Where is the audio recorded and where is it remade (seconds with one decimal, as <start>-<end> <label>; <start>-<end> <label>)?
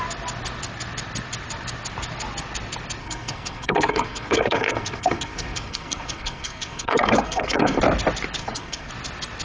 0.0-3.0 recorded; 3.0-7.8 remade; 7.8-8.4 recorded; 8.4-8.9 remade; 8.9-9.4 recorded